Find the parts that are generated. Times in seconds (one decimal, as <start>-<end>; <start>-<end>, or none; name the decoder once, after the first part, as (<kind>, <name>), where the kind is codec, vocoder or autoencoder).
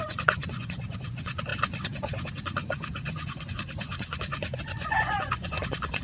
0.0-6.0 (vocoder, Vocos)